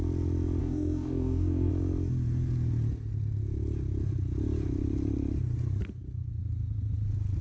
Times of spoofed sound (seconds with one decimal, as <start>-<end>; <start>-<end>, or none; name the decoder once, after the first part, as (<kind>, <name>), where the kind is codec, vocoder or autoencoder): 0.6-1.7 (codec, DAC)